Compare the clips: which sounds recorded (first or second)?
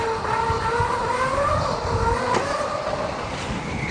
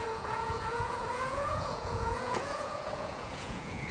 first